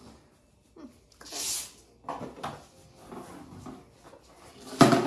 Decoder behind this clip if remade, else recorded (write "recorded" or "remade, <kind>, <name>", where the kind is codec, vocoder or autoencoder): recorded